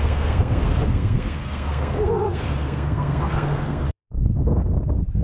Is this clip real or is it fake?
fake